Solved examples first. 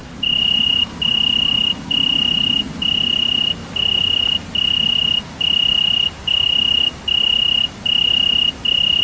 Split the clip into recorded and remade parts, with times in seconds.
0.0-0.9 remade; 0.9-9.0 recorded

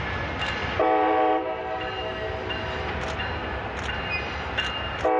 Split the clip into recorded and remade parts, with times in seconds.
0.0-0.6 recorded; 0.6-1.6 remade; 1.6-5.2 recorded

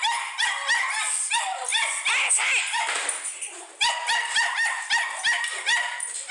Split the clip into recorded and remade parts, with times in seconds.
0.0-6.3 recorded

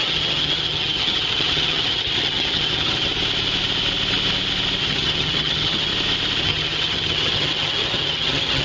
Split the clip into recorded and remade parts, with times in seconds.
0.0-3.1 remade; 3.1-4.8 recorded; 4.8-5.9 remade; 5.9-6.4 recorded; 6.4-8.6 remade

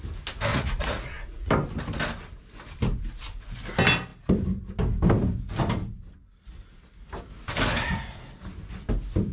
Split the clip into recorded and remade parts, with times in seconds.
0.0-0.5 recorded; 0.5-1.5 remade; 1.5-9.3 recorded

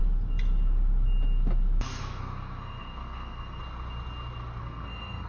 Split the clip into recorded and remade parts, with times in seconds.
0.0-2.0 recorded; 2.0-3.6 remade; 3.6-4.6 recorded; 4.6-5.3 remade

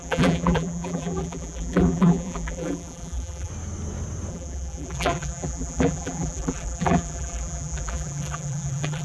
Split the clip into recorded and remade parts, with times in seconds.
0.0-3.5 remade; 3.5-4.3 recorded; 4.3-9.0 remade